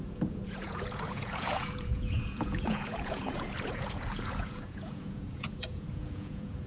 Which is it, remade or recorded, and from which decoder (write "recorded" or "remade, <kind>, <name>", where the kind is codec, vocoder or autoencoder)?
remade, vocoder, Vocos